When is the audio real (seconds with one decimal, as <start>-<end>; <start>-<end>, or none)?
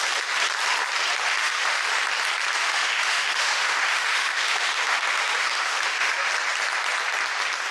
0.0-1.4; 1.9-2.6; 6.3-7.7